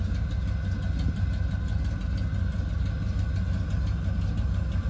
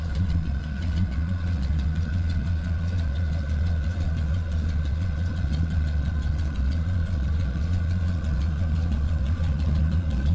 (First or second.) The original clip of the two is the first